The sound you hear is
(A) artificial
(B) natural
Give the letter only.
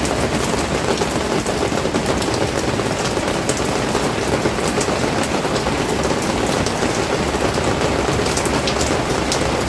B